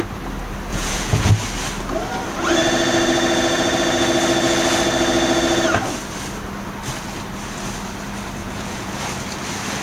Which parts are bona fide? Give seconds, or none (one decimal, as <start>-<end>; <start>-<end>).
0.0-0.7; 1.3-8.4; 9.0-9.8

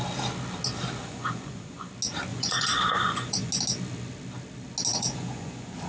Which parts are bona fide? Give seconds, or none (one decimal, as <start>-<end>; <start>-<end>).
0.0-1.0; 1.9-2.3; 3.5-4.9